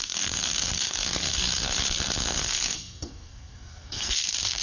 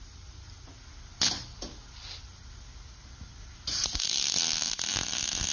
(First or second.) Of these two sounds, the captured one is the second